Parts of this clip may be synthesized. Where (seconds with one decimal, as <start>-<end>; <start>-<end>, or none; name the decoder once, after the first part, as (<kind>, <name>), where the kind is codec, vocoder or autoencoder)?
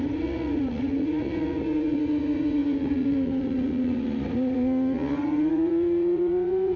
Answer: 0.0-6.8 (vocoder, Vocos)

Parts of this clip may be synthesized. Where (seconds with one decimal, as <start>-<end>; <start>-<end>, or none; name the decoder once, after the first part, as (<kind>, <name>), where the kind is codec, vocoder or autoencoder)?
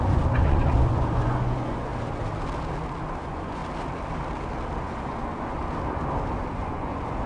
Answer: 0.0-1.9 (vocoder, Vocos); 3.2-3.6; 4.8-5.6; 6.5-7.3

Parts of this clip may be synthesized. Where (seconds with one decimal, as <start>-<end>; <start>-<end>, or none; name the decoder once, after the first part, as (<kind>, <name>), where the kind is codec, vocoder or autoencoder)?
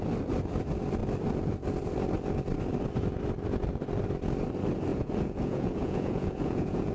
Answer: 4.9-6.9 (vocoder, Vocos)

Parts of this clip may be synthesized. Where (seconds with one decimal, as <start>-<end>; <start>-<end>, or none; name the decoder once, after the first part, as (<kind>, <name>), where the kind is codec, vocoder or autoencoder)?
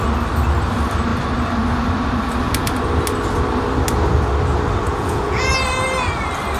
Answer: 4.9-5.5 (vocoder, Vocos)